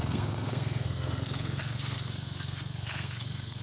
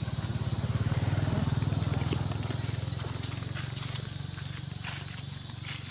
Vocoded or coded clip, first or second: first